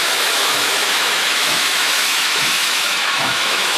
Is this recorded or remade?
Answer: remade